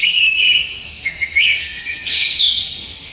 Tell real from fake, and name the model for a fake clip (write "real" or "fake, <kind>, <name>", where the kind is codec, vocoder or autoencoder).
fake, codec, SNAC